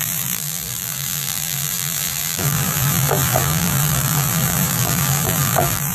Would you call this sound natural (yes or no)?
no